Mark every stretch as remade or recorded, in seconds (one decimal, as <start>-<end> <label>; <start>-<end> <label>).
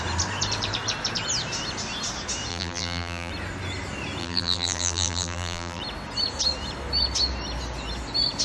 0.0-2.5 recorded; 2.5-3.3 remade; 3.3-4.2 recorded; 4.2-5.8 remade; 5.8-8.4 recorded